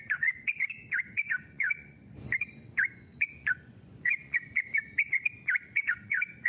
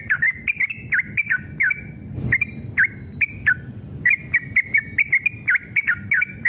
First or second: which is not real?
first